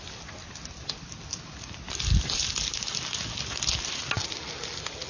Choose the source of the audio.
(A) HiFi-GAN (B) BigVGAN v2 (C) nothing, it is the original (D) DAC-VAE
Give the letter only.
C